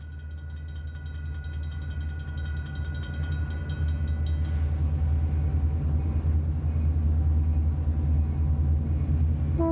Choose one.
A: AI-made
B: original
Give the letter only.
B